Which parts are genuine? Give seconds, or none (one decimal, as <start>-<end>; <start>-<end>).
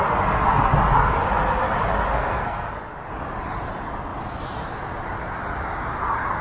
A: 0.0-2.1; 2.9-6.4